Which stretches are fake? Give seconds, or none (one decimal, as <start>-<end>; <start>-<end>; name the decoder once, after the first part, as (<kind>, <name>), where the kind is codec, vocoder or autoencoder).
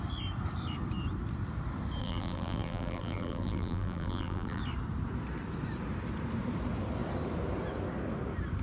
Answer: 2.0-4.6 (vocoder, BigVGAN v2)